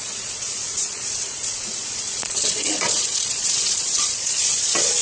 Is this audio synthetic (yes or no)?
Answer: yes